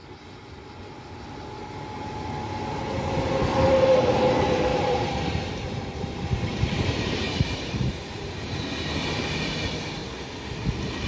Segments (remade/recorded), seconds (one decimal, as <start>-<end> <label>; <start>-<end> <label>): 0.0-4.7 recorded; 4.7-8.4 remade; 8.4-11.1 recorded

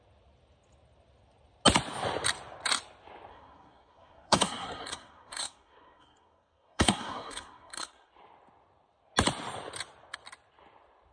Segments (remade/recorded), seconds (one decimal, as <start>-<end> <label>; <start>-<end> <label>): 0.0-3.3 recorded; 3.3-8.1 remade; 8.1-11.1 recorded

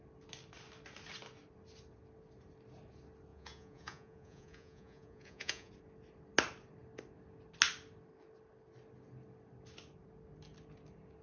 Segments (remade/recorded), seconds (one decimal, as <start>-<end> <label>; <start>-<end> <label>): 0.0-3.3 recorded; 3.3-5.7 remade; 5.7-11.2 recorded

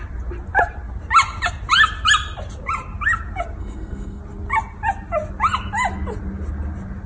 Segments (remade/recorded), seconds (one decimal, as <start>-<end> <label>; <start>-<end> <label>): 0.0-3.6 recorded; 3.6-4.2 remade; 4.2-7.1 recorded

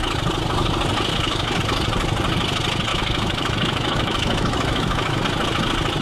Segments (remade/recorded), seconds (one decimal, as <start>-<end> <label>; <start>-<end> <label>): 0.0-1.1 recorded; 1.1-1.6 remade; 1.6-2.9 recorded; 2.9-5.2 remade; 5.2-6.0 recorded